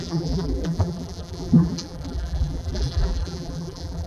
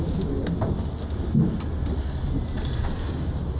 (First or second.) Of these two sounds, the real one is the second